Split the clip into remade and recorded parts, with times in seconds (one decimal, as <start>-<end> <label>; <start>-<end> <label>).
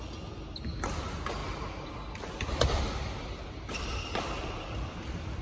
0.0-5.4 recorded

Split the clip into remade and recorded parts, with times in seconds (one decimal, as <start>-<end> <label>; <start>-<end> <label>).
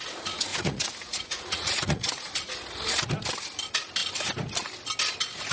0.0-0.5 recorded; 0.5-2.3 remade; 2.3-5.5 recorded